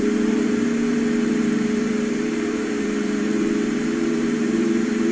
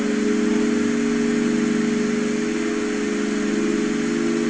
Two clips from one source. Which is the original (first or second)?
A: second